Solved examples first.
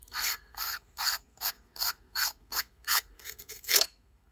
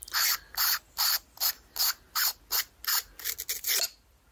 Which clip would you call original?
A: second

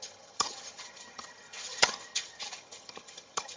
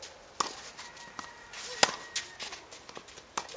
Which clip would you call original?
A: second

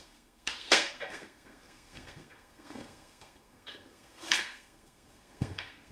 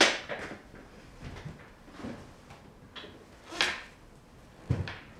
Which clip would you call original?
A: second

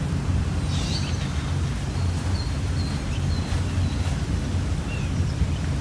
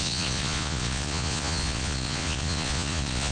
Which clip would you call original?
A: first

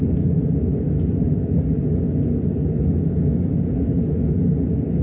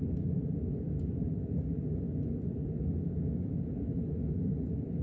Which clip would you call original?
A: first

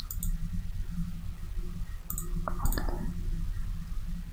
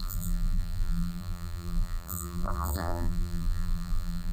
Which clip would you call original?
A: first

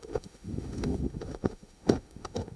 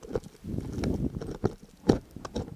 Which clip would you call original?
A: second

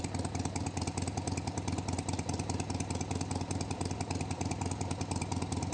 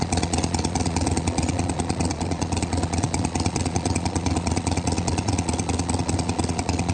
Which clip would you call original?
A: first